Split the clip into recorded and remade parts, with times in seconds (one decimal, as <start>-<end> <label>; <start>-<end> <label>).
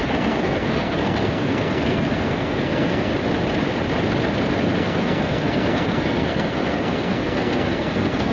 0.0-3.1 remade; 3.1-4.6 recorded; 4.6-8.3 remade